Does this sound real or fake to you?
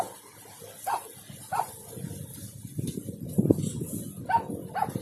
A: real